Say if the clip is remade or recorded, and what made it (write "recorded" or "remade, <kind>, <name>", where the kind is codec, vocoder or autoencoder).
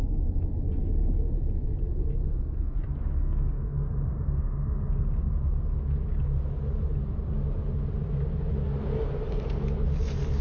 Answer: recorded